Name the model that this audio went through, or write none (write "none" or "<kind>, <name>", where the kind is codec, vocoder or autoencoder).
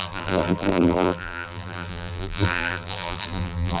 vocoder, BigVGAN v2